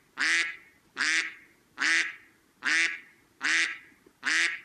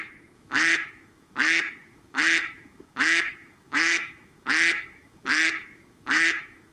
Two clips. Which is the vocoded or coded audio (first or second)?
second